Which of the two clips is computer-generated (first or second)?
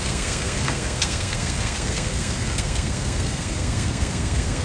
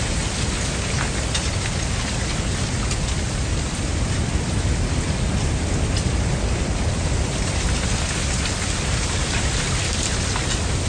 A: first